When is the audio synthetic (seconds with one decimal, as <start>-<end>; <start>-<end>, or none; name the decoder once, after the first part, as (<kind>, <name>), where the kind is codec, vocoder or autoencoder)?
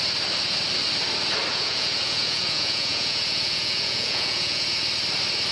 1.5-4.8 (vocoder, Vocos)